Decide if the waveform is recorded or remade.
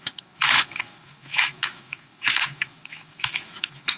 remade